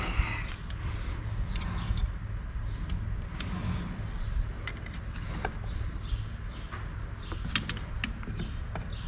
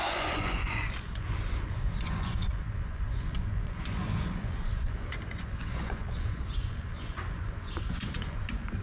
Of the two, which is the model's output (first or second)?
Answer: second